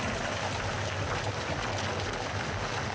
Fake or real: real